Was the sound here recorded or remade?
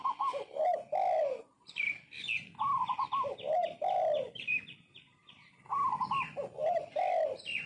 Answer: recorded